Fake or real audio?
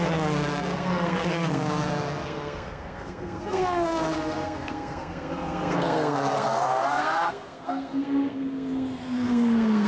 fake